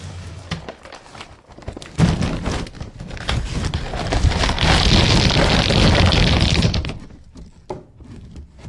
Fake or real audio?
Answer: real